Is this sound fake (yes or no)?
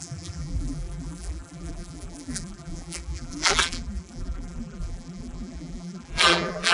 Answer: yes